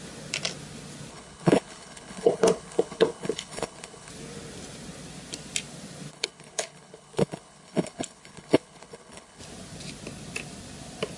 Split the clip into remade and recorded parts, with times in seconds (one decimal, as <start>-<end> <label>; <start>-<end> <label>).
0.0-1.1 recorded; 1.1-4.1 remade; 4.1-6.1 recorded; 6.1-9.4 remade; 9.4-11.2 recorded